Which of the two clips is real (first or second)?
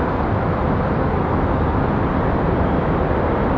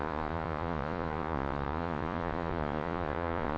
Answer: first